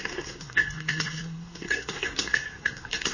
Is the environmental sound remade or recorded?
remade